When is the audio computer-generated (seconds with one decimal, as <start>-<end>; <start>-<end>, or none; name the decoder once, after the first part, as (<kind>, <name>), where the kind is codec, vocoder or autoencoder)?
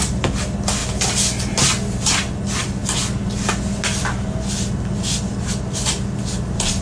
none